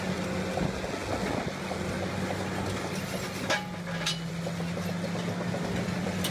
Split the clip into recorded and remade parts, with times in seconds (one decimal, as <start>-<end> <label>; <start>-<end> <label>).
0.0-6.3 recorded